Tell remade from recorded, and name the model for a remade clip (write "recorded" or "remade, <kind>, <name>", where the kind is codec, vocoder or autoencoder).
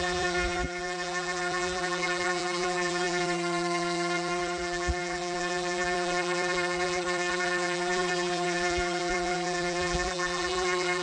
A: remade, vocoder, BigVGAN v2